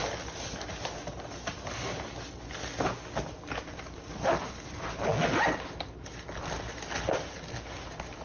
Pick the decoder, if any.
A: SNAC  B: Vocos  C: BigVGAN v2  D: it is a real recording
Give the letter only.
D